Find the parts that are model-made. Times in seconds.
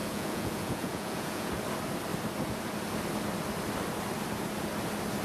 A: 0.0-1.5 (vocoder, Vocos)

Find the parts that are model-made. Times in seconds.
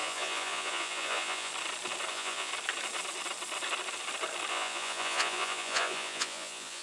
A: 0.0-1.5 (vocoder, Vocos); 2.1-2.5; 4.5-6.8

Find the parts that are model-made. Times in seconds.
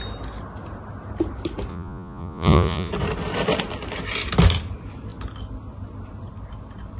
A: 1.7-2.9 (vocoder, Vocos)